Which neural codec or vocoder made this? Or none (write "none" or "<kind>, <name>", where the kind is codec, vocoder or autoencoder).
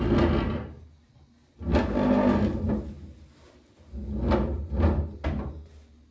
none